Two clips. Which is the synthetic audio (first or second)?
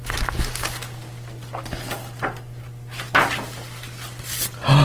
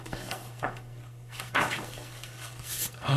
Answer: second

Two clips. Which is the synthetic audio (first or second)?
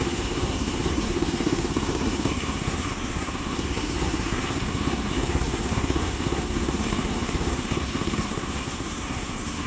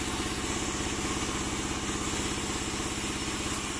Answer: first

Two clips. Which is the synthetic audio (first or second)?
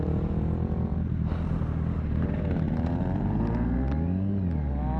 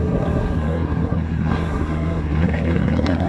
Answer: second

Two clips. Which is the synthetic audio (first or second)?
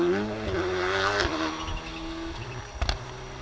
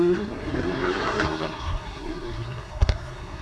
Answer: second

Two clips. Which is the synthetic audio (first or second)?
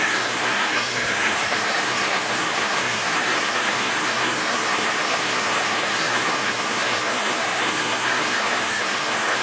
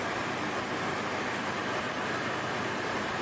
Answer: first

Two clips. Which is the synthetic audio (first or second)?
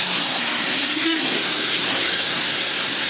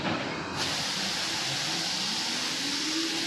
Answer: first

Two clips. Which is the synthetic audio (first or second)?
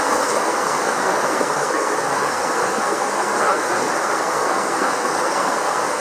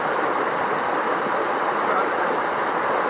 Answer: first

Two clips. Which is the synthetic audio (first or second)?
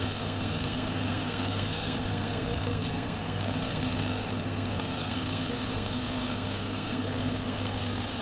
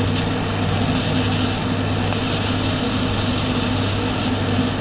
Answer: first